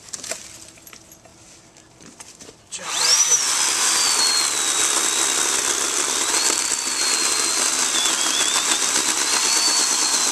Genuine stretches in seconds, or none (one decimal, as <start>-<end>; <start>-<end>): 0.0-10.3